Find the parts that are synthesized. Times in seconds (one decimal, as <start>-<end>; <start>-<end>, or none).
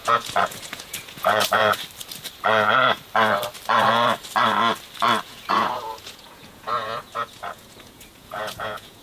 0.0-1.6; 5.2-9.0